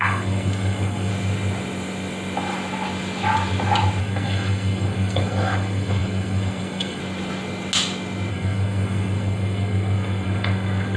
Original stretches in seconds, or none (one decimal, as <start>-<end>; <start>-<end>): 1.1-4.0; 7.0-8.3